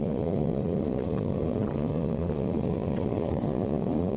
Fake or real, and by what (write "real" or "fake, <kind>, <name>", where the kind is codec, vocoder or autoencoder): fake, vocoder, Vocos